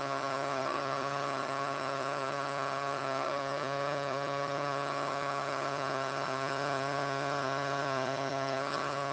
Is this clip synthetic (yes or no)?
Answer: yes